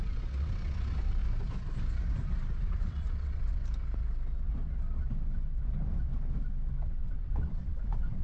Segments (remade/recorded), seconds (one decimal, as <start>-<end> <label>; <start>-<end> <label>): 0.0-1.2 remade; 1.2-2.6 recorded; 2.6-3.6 remade; 3.6-6.9 recorded; 6.9-8.2 remade

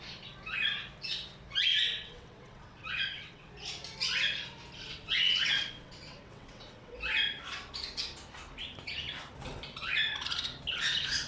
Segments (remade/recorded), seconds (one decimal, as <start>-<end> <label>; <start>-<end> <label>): 0.0-1.7 recorded; 1.7-3.5 remade; 3.5-4.9 recorded; 4.9-7.0 remade; 7.0-11.3 recorded

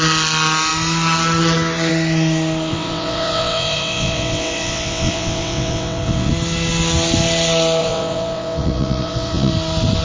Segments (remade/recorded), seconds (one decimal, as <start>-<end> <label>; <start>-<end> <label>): 0.0-2.7 recorded; 2.7-6.3 remade; 6.3-7.8 recorded; 7.8-9.5 remade; 9.5-10.0 recorded

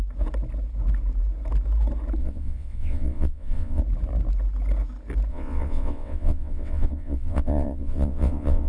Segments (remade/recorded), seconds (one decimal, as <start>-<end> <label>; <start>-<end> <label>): 0.0-2.2 recorded; 2.2-3.8 remade; 3.8-5.3 recorded; 5.3-8.7 remade